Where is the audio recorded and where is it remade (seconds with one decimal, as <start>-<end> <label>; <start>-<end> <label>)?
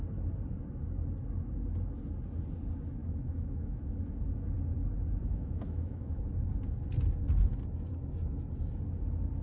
0.0-3.0 recorded; 3.0-4.2 remade; 4.2-5.3 recorded; 5.3-6.3 remade; 6.3-9.4 recorded